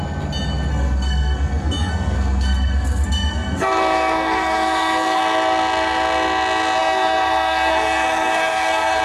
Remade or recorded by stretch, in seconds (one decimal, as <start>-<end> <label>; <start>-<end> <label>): 0.0-0.7 recorded; 0.7-5.2 remade; 5.2-6.8 recorded; 6.8-9.0 remade